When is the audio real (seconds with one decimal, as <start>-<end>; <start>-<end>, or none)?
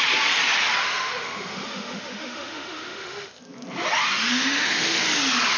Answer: 0.0-0.8; 3.4-4.3; 5.0-5.6